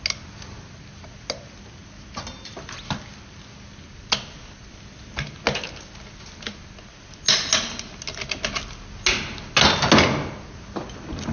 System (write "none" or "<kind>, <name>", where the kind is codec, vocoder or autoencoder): none